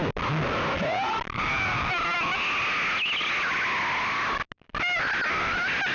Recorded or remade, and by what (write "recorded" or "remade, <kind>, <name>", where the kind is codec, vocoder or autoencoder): recorded